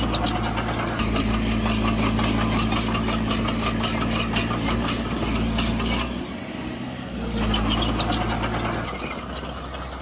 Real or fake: real